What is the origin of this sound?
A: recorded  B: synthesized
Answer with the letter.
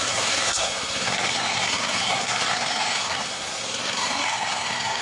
B